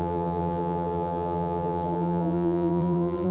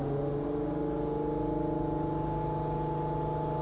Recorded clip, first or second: second